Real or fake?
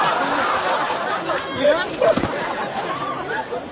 real